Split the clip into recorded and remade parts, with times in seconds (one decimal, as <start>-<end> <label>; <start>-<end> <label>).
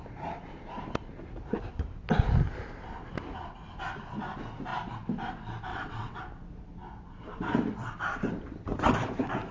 0.0-5.7 recorded; 5.7-6.2 remade; 6.2-9.5 recorded